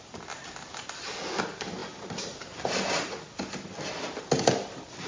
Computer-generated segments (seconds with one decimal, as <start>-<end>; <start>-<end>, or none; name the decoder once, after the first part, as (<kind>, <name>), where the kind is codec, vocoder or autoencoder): 0.4-1.4 (vocoder, BigVGAN v2); 1.8-2.5